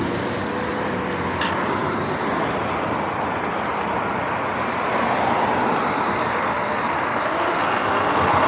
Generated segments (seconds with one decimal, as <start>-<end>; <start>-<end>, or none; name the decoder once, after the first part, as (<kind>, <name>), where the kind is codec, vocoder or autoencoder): none